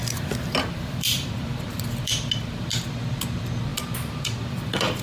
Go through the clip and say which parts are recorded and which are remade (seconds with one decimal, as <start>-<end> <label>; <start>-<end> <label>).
0.0-2.8 remade; 2.8-3.7 recorded; 3.7-5.0 remade